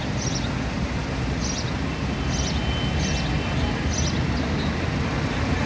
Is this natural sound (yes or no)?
yes